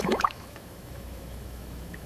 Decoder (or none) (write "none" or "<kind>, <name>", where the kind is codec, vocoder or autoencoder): autoencoder, DAC-VAE